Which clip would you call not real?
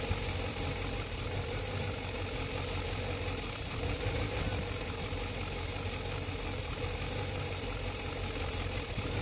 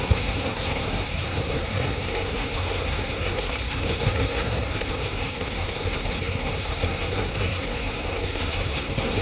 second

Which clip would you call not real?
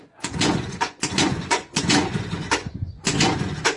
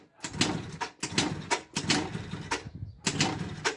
first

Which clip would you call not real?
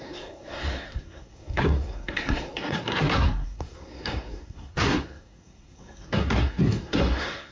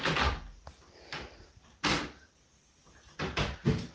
first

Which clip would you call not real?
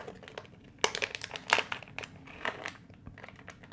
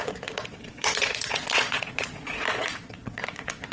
second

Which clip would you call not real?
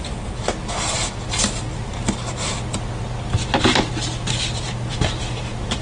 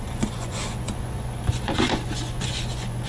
second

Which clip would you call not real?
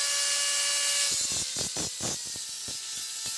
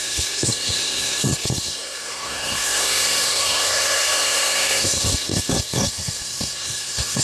second